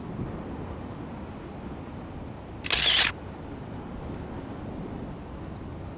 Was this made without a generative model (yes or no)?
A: yes